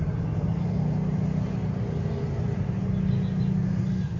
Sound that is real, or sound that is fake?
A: real